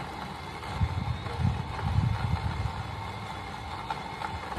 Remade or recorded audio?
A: recorded